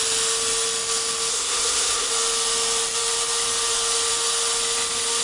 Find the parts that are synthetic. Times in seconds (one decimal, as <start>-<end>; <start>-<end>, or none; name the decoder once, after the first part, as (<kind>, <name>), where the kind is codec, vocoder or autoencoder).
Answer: 1.3-2.1 (codec, SNAC)